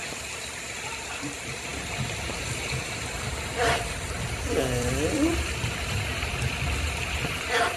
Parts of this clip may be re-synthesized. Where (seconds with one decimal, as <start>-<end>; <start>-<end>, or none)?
0.0-7.8